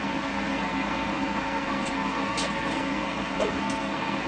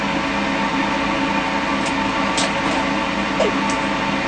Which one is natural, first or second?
second